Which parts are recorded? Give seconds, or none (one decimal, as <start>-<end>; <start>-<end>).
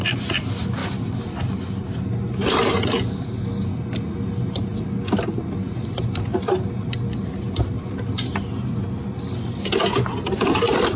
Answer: 0.0-11.0